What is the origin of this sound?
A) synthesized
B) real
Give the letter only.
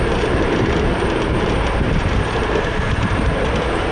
A